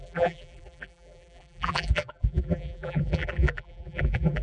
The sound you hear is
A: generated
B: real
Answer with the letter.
A